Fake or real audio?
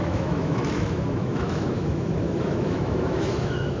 fake